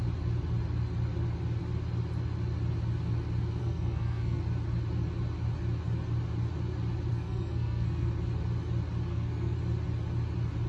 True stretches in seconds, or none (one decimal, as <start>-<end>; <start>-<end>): 0.0-3.6; 4.4-7.1; 8.1-9.1; 9.6-10.7